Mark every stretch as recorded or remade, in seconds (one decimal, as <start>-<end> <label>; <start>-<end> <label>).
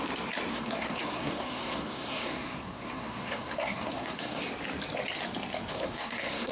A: 0.0-0.5 recorded; 0.5-4.4 remade; 4.4-5.7 recorded; 5.7-6.5 remade